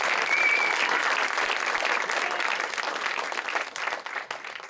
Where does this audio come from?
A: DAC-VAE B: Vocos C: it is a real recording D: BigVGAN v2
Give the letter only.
C